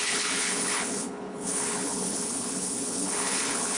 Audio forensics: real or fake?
fake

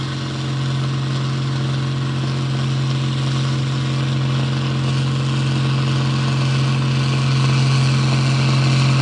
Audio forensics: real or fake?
real